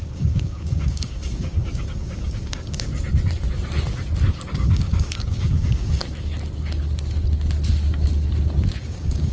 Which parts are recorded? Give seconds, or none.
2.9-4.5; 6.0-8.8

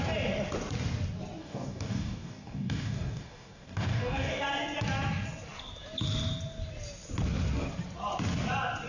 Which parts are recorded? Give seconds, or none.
0.0-1.4; 4.4-8.9

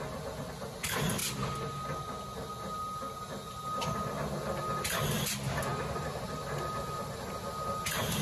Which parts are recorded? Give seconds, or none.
0.0-8.2

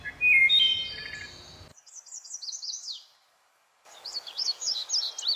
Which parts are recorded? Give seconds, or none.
0.0-1.7; 4.9-5.4

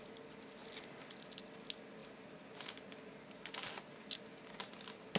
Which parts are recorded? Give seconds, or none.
0.0-5.2